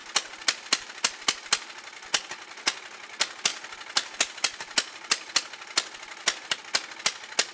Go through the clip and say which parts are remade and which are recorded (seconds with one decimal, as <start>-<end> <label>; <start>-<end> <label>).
0.0-2.6 remade; 2.6-3.5 recorded; 3.5-6.6 remade; 6.6-7.5 recorded